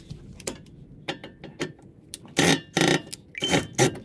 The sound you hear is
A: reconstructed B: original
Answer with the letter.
B